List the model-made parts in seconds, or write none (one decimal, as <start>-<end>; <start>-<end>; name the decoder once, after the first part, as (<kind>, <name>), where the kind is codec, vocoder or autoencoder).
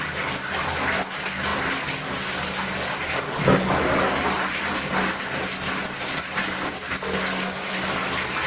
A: none